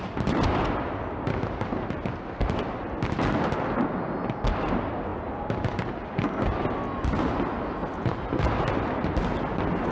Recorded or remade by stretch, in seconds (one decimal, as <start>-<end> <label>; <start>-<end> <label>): 0.0-9.9 recorded